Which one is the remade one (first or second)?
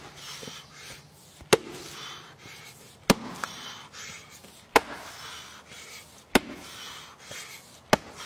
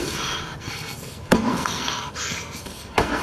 second